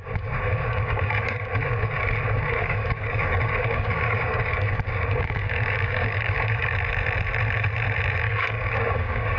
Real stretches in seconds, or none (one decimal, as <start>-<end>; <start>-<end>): 6.7-8.2